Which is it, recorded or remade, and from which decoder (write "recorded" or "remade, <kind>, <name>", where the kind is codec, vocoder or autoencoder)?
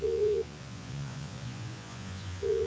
remade, vocoder, Vocos